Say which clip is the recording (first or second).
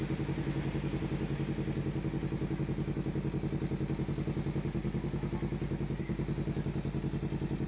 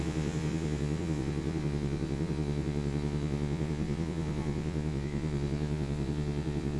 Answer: first